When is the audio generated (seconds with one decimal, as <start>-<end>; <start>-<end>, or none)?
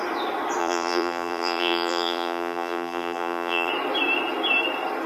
0.6-3.7